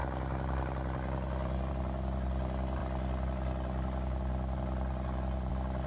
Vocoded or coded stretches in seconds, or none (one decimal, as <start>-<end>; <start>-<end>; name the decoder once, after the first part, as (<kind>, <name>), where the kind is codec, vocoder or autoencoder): none